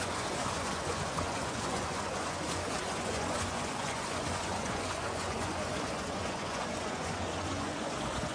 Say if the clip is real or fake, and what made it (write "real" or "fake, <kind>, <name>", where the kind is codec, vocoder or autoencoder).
fake, vocoder, Vocos